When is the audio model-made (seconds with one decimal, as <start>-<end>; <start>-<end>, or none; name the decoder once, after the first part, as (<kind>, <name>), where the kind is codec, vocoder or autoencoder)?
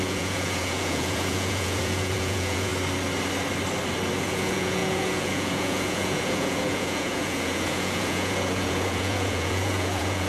0.0-2.7 (vocoder, Vocos); 4.2-10.3